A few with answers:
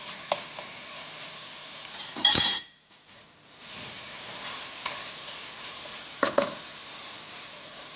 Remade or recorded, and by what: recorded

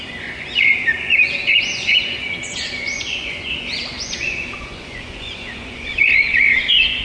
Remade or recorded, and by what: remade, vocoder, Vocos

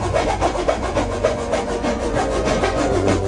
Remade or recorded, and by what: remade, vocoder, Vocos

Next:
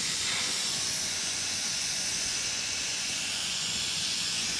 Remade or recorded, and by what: remade, vocoder, Vocos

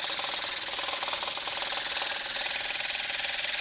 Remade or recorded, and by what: recorded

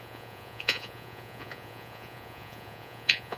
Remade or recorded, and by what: remade, vocoder, Vocos